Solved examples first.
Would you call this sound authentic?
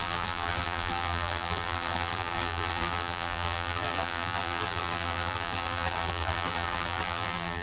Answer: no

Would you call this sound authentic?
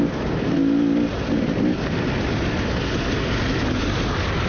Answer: yes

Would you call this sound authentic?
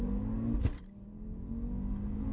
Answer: yes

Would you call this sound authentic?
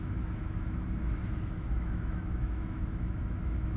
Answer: no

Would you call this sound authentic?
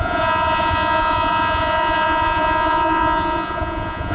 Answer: no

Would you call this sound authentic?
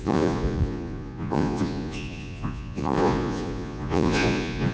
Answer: no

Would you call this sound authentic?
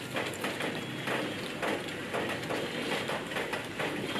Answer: yes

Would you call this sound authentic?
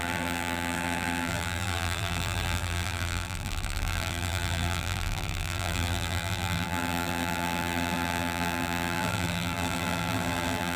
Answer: no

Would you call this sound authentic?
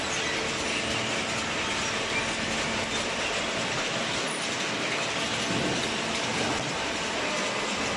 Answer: yes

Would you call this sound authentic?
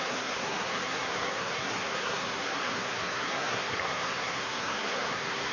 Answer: no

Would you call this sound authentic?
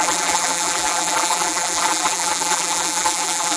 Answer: no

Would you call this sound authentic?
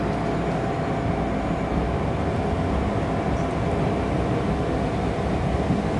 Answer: yes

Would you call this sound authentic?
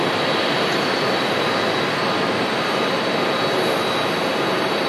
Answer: yes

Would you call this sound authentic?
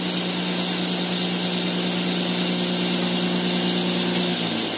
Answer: yes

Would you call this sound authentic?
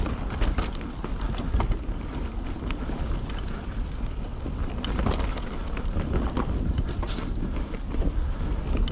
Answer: yes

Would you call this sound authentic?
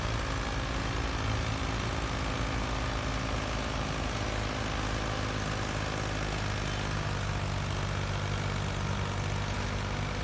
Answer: yes